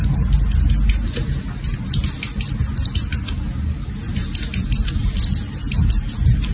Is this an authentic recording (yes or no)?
yes